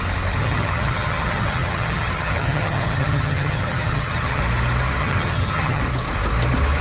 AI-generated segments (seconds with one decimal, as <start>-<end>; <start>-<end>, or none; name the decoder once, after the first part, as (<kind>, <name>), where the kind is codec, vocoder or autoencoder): 0.4-4.4 (vocoder, HiFi-GAN); 5.0-5.8